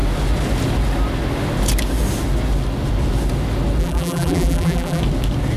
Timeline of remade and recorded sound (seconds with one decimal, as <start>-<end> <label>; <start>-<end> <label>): 0.0-3.8 recorded; 3.8-5.0 remade; 5.0-5.6 recorded